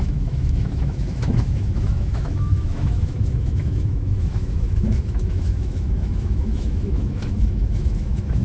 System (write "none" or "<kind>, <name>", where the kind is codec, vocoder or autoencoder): autoencoder, DAC-VAE